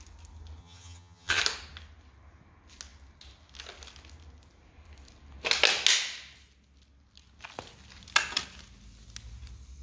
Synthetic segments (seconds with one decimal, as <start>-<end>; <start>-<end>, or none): 0.6-1.4